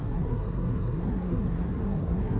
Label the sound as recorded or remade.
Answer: remade